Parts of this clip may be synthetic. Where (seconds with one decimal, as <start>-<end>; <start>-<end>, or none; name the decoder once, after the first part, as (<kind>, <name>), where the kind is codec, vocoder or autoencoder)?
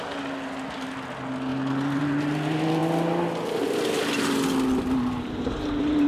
none